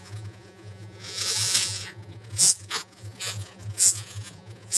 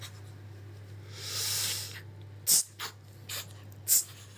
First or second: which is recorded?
second